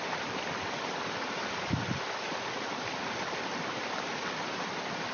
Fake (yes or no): no